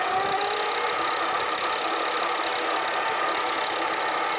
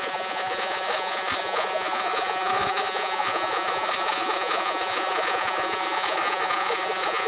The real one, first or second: first